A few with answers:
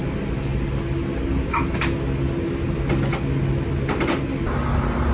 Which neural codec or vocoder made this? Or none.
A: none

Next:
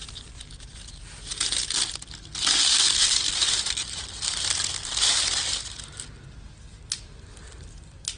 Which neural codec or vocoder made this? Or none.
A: none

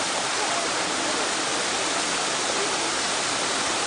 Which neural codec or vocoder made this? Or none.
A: none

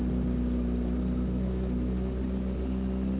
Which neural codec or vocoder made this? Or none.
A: none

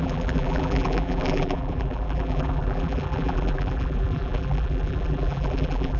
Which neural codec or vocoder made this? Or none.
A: vocoder, BigVGAN v2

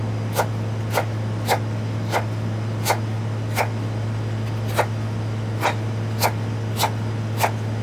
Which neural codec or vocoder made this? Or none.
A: none